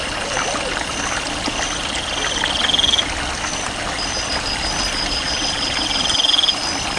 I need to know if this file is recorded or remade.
recorded